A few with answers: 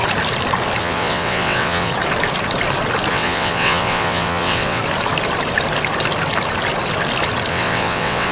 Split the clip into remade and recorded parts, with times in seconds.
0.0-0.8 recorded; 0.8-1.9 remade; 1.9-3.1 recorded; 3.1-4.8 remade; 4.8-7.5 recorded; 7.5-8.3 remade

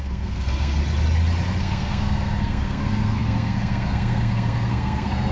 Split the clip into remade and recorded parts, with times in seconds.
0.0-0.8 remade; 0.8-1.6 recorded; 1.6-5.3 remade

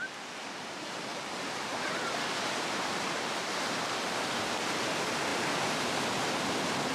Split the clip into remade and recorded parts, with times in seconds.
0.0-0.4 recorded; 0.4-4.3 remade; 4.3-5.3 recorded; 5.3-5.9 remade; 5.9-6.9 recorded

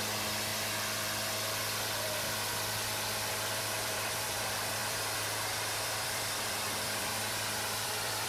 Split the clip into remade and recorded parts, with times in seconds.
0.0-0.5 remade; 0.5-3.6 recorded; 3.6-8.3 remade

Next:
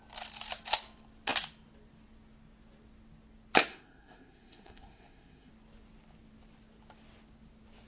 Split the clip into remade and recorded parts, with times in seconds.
0.0-3.7 recorded; 3.7-5.5 remade; 5.5-7.9 recorded

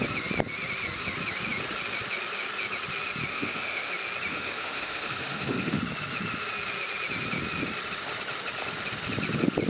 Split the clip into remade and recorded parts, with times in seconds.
0.0-3.3 recorded; 3.3-3.9 remade; 3.9-4.3 recorded; 4.3-5.8 remade; 5.8-9.7 recorded

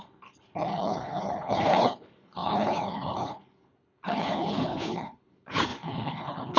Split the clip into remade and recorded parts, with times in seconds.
0.0-6.6 remade

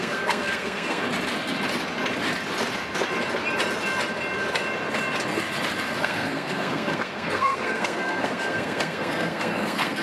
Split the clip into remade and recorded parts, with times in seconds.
0.0-1.0 remade; 1.0-6.0 recorded; 6.0-10.0 remade